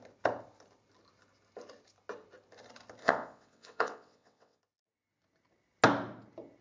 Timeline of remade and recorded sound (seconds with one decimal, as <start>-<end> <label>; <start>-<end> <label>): 0.0-3.0 recorded; 3.0-4.6 remade; 4.6-6.6 recorded